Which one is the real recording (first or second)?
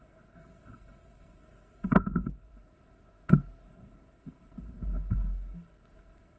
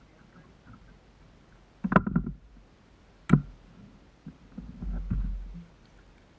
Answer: second